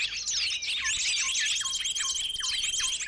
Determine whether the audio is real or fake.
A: real